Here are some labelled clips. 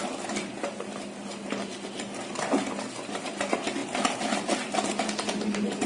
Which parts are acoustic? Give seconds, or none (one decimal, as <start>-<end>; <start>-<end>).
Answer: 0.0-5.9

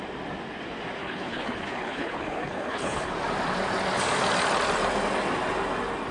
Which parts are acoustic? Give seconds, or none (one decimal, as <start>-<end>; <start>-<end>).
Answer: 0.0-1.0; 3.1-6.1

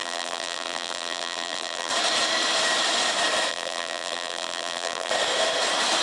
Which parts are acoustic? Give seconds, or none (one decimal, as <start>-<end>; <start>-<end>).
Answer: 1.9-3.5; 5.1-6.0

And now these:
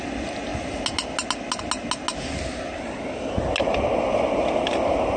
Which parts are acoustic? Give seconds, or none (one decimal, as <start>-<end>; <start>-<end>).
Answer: 0.0-5.2

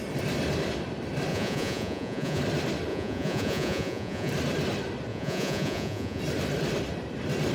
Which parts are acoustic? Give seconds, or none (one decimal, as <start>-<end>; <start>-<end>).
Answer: 0.0-1.3; 2.4-2.9; 4.3-5.1; 6.2-7.5

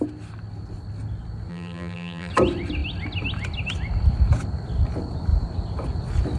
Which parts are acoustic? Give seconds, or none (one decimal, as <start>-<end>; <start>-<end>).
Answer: 0.0-1.5; 2.3-6.4